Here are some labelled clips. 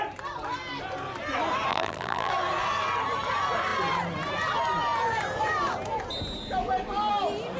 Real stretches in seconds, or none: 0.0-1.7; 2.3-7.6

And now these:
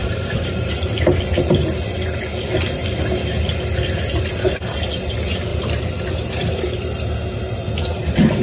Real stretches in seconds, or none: 1.2-5.5; 6.6-8.4